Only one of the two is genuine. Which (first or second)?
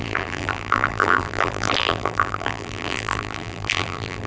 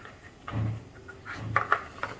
second